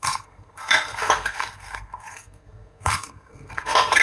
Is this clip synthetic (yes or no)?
yes